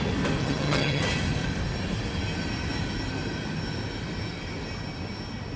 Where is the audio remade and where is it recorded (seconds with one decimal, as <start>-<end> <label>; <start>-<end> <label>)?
0.0-0.4 recorded; 0.4-1.0 remade; 1.0-5.6 recorded